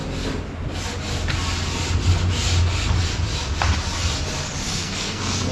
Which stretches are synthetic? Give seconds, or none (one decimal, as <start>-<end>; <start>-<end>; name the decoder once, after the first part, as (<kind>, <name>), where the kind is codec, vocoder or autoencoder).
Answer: 4.6-5.5 (codec, SNAC)